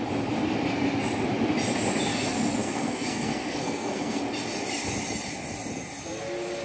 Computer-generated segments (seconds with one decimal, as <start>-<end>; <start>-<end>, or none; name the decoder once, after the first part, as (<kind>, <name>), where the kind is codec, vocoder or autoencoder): 2.6-4.2 (codec, SNAC)